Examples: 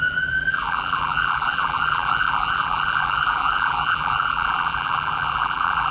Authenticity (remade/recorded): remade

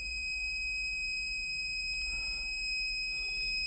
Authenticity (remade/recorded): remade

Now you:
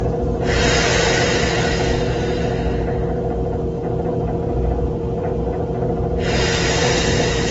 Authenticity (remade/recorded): recorded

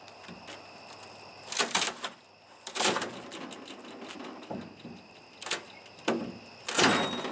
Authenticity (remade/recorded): recorded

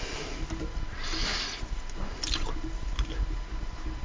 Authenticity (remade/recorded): recorded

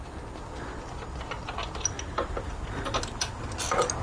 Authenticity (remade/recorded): recorded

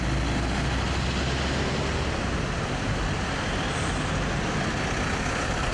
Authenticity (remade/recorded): recorded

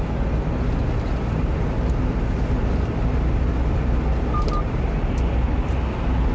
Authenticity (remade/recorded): recorded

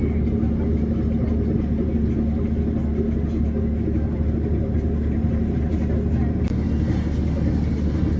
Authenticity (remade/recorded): recorded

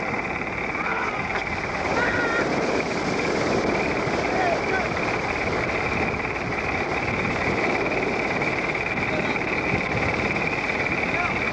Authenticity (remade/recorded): recorded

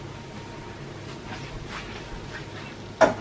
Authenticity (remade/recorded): recorded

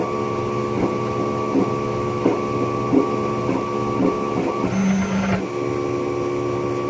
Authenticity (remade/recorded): recorded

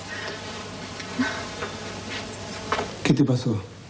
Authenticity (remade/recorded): recorded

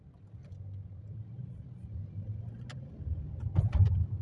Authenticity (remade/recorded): recorded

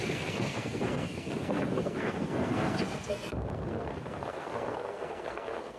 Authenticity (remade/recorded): remade